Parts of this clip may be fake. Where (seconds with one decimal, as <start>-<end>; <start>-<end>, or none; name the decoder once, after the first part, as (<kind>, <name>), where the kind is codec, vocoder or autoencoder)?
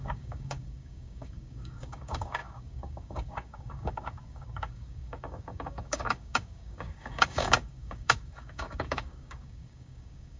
0.0-10.4 (codec, DAC)